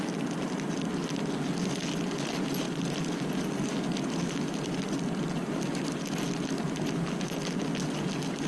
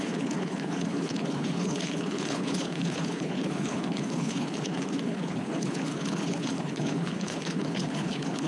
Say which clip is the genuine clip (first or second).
first